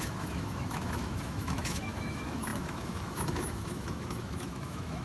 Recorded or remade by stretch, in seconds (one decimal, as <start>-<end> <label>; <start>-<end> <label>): 0.0-5.0 remade